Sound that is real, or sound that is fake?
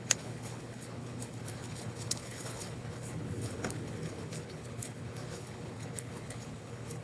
fake